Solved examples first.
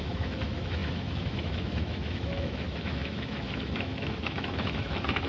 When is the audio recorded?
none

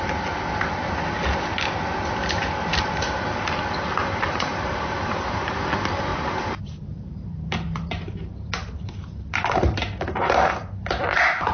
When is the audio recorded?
0.0-4.0; 5.5-6.1; 10.5-11.5

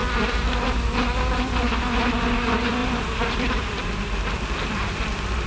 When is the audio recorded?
0.0-2.8; 3.9-5.5

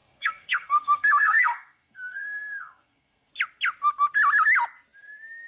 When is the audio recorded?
3.3-5.5